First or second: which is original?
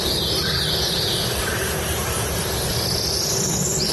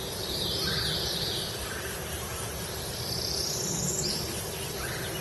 first